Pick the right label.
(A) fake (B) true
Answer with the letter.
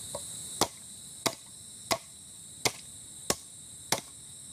B